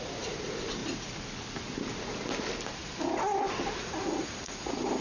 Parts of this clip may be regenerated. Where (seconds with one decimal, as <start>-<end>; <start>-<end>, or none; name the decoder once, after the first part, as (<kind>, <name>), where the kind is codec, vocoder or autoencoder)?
0.0-0.8 (vocoder, Vocos); 3.8-5.0